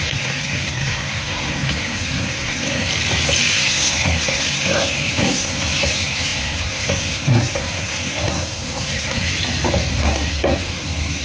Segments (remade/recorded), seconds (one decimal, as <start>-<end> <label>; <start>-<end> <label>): 0.0-2.9 remade; 2.9-3.5 recorded; 3.5-9.3 remade; 9.3-9.9 recorded; 9.9-11.2 remade